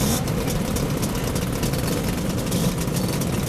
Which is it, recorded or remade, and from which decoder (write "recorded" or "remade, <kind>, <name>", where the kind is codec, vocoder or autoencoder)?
recorded